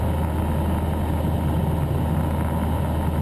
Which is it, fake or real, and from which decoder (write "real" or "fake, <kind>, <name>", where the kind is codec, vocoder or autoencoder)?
real